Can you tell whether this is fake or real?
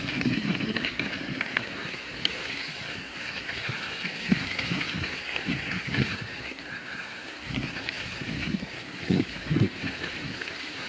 fake